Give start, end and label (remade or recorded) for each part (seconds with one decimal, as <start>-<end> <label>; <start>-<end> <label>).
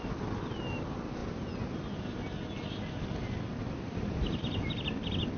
0.0-5.4 recorded